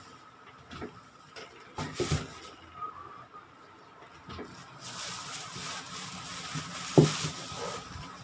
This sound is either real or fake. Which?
real